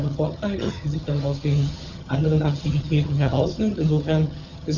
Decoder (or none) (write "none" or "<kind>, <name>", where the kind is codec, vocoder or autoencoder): vocoder, HiFi-GAN